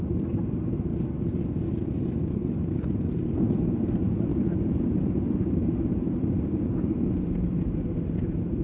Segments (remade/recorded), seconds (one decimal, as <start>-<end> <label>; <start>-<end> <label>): 0.0-0.9 remade; 0.9-2.1 recorded; 2.1-8.6 remade